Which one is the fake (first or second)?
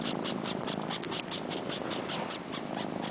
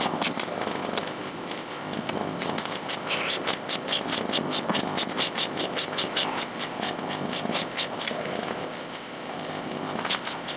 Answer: second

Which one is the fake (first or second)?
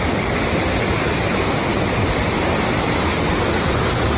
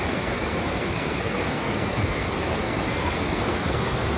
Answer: second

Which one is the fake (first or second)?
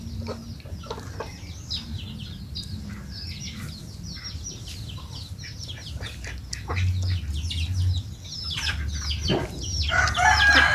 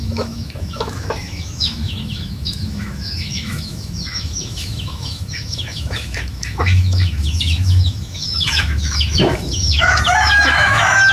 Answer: second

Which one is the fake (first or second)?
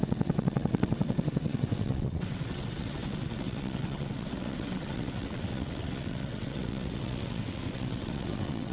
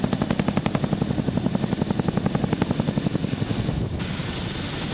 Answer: first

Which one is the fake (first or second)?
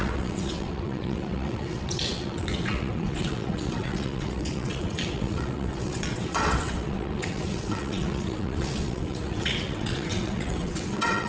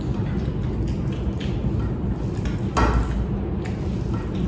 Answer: first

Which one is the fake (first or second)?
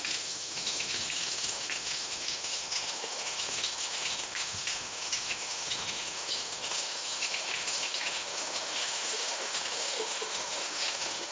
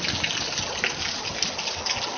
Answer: first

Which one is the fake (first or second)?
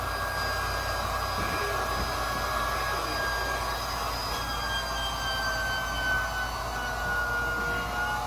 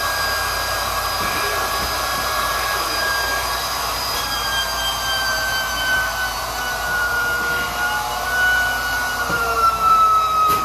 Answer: second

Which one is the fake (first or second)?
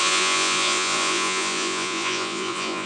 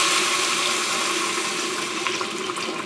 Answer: first